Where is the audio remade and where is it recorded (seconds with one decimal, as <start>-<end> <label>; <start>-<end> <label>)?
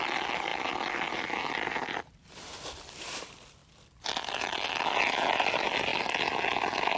0.0-0.5 remade; 0.5-1.1 recorded; 1.1-3.6 remade; 3.6-5.5 recorded; 5.5-5.9 remade; 5.9-7.0 recorded